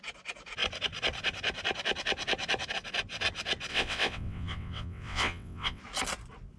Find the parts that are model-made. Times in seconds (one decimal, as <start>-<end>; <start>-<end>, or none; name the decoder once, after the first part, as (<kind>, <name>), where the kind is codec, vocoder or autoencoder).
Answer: 3.7-5.8 (vocoder, WaveNeXt)